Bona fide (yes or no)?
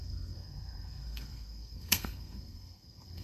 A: no